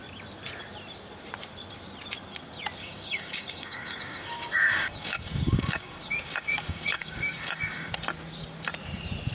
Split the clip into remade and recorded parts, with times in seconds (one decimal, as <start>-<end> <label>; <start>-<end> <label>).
0.0-2.8 recorded; 2.8-7.9 remade; 7.9-9.3 recorded